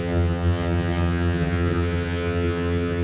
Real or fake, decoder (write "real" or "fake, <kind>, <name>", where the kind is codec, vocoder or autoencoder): fake, vocoder, HiFi-GAN